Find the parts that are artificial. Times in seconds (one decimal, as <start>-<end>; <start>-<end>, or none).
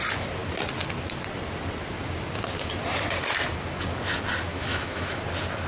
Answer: 4.5-5.2